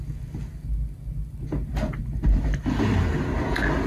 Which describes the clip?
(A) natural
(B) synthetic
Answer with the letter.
A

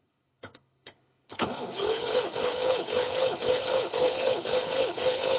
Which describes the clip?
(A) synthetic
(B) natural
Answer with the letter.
A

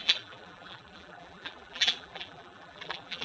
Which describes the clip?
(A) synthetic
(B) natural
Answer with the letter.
A